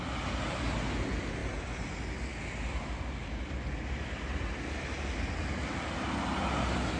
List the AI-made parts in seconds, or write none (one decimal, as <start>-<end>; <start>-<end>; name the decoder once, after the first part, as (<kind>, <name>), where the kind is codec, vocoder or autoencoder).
none